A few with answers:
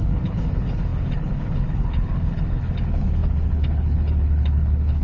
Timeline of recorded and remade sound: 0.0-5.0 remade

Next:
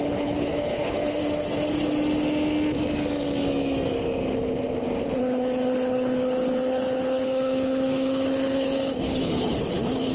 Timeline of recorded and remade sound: 0.0-1.2 remade; 1.2-5.0 recorded; 5.0-10.1 remade

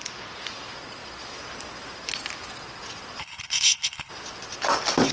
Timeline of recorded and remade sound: 0.0-3.2 recorded; 3.2-4.1 remade; 4.1-5.1 recorded

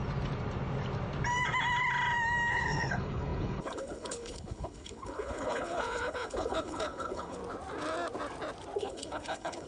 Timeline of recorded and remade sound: 0.0-2.5 recorded; 2.5-7.4 remade; 7.4-8.8 recorded; 8.8-9.7 remade